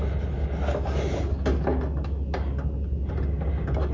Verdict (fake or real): real